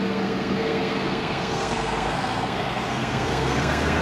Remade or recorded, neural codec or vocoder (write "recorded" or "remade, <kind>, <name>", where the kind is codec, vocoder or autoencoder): remade, codec, SNAC